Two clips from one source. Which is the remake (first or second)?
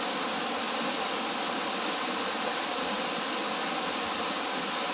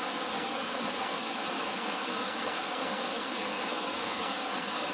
second